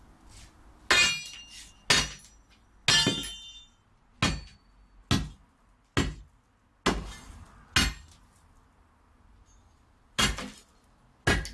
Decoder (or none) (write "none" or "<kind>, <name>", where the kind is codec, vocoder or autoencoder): none